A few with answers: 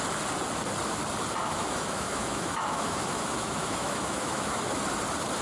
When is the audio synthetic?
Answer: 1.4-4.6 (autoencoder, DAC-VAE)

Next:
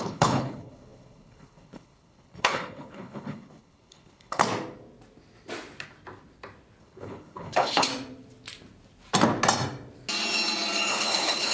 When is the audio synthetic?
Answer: 0.0-4.4 (codec, HILCodec); 6.8-7.9; 10.9-11.5

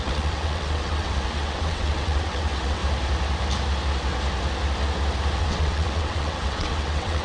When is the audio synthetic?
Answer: 0.0-2.8 (vocoder, WaveNeXt); 5.4-7.2

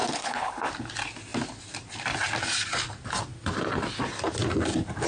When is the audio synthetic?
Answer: 0.0-0.7 (codec, HILCodec)